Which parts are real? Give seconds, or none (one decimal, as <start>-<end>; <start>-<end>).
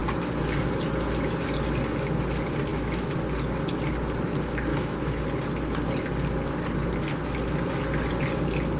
0.0-2.7; 3.2-4.7; 5.2-8.8